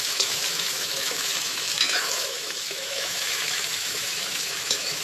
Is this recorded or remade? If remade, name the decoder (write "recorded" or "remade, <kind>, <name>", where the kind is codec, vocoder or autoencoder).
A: remade, autoencoder, DAC-VAE